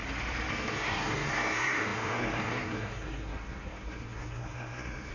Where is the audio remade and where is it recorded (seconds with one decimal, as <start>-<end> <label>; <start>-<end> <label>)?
0.0-0.5 recorded; 0.5-5.1 remade